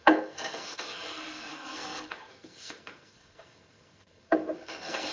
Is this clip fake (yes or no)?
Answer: yes